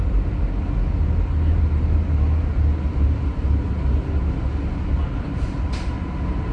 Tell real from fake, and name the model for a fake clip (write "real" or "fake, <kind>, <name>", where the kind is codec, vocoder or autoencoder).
real